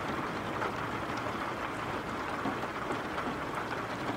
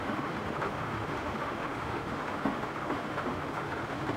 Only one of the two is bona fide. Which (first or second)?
first